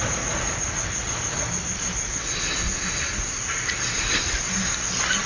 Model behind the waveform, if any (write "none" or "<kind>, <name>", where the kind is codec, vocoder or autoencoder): none